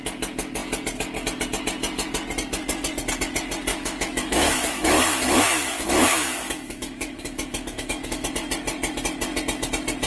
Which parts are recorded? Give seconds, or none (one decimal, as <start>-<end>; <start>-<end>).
0.0-3.7; 8.3-10.1